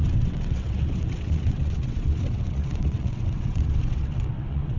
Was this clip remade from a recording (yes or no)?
yes